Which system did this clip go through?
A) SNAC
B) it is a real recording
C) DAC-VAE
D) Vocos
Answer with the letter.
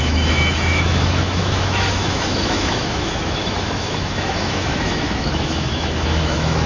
C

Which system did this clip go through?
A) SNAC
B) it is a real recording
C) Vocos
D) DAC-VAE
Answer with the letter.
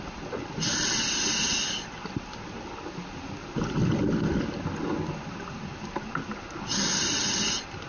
B